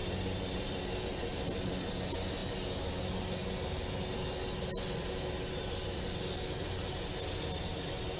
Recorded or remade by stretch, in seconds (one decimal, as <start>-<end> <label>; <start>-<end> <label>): 0.0-1.9 remade; 1.9-8.2 recorded